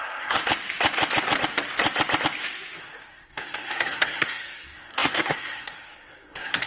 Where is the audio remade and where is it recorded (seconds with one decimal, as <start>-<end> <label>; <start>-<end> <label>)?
0.0-0.4 remade; 0.4-2.8 recorded; 2.8-6.7 remade